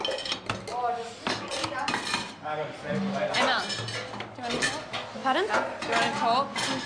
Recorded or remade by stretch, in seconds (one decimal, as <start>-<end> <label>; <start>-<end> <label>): 0.0-6.9 recorded